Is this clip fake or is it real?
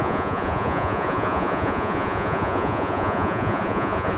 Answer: fake